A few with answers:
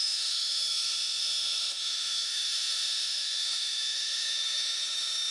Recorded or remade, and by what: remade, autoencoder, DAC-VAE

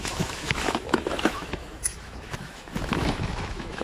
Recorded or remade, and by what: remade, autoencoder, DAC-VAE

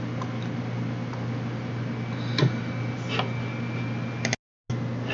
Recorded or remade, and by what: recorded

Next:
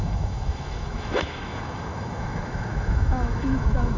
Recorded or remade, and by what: remade, autoencoder, DAC-VAE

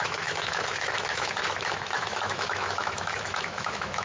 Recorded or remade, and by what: remade, autoencoder, DAC-VAE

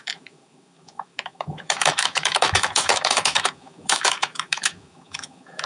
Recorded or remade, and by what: remade, autoencoder, DAC-VAE